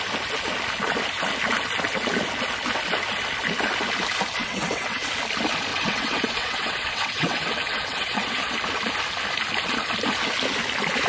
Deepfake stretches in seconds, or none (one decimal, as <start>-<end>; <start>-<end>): 4.4-5.1; 5.7-8.5